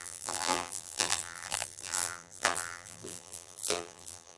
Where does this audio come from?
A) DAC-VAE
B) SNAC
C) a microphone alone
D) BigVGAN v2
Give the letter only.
D